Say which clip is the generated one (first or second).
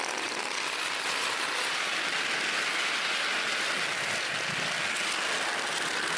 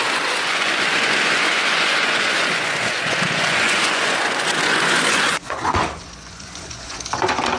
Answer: second